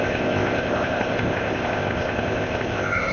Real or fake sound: fake